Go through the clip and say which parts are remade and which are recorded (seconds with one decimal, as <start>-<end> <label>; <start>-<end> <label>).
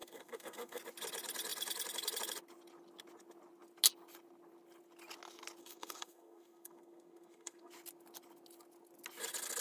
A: 0.0-0.8 remade; 0.8-5.6 recorded; 5.6-7.7 remade; 7.7-9.6 recorded